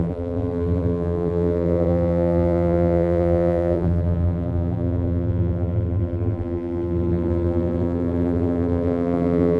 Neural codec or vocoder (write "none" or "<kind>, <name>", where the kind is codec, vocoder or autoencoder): vocoder, BigVGAN v2